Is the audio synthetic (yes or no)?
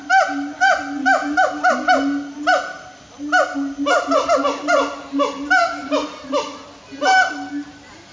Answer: no